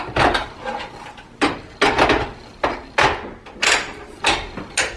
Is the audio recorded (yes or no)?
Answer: yes